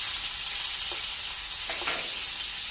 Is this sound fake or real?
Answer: real